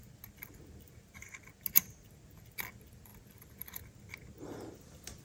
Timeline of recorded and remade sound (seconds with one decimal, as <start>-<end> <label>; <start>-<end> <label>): 0.0-5.2 recorded